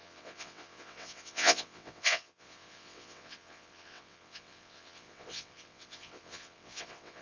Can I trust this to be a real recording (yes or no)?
no